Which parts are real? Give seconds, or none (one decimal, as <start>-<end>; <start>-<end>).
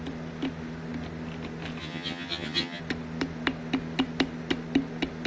0.0-1.8; 2.8-5.3